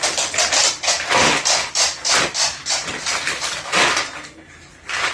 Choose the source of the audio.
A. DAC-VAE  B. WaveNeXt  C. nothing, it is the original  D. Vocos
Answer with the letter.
C